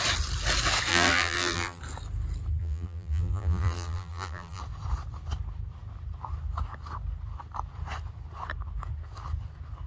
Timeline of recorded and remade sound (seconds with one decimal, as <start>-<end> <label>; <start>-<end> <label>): 0.0-0.9 recorded; 0.9-1.8 remade; 1.8-2.6 recorded; 2.6-4.6 remade; 4.6-9.9 recorded